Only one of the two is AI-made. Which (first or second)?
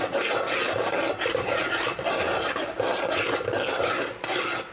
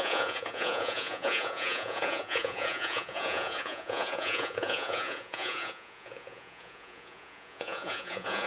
second